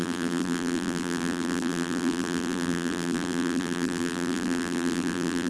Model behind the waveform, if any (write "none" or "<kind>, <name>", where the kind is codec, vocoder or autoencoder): vocoder, BigVGAN v2